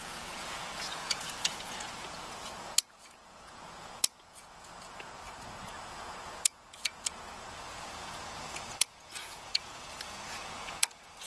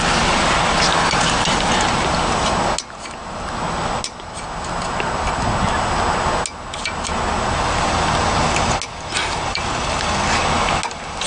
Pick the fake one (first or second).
first